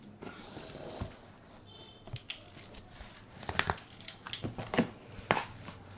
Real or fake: real